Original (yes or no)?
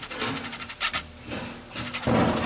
yes